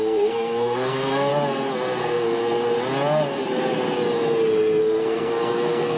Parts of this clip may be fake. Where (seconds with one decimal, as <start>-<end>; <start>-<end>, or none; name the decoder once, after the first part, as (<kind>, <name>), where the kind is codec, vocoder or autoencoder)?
0.0-1.3 (codec, SNAC); 2.0-2.4; 4.8-6.0